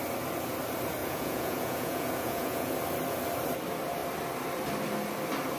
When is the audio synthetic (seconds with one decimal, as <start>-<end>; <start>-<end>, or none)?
1.0-2.7